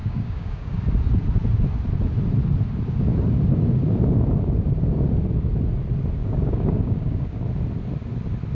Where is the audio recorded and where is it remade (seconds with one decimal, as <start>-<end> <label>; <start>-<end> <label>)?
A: 0.0-0.8 remade; 0.8-6.2 recorded; 6.2-7.4 remade; 7.4-8.5 recorded